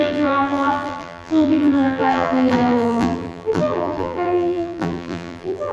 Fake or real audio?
fake